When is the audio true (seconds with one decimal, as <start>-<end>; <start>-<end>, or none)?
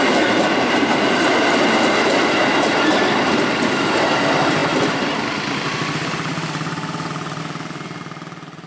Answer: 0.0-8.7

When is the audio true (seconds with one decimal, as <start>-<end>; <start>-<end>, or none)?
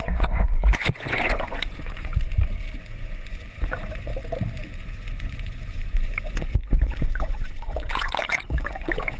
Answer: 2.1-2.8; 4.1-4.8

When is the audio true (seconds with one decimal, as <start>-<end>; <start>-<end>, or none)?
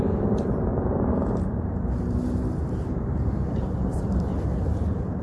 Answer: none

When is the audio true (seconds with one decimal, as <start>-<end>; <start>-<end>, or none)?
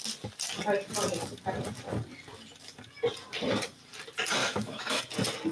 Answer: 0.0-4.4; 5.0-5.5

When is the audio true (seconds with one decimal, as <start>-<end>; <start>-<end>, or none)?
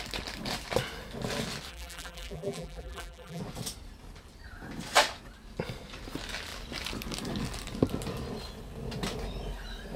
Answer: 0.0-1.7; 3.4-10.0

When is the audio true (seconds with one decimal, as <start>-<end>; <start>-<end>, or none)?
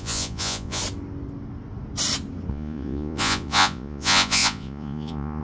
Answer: 0.8-2.5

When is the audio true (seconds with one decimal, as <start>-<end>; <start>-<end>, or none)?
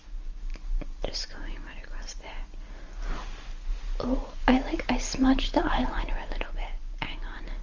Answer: 0.0-5.2; 6.0-7.6